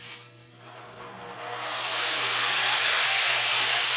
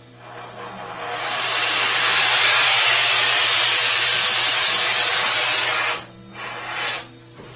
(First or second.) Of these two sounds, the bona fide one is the second